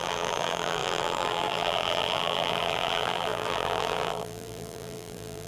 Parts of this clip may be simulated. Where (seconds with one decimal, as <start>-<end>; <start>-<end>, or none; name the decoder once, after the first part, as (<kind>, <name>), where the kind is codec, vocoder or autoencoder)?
0.0-5.5 (vocoder, BigVGAN v2)